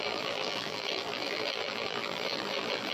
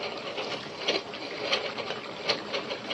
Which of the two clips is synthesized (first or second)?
first